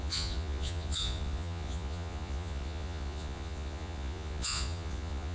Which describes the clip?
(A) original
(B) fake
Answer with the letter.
B